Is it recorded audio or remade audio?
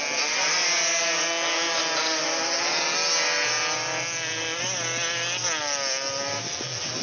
recorded